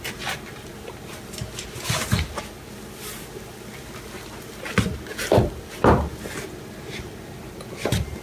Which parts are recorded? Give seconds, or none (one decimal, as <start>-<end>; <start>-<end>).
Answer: 0.0-8.2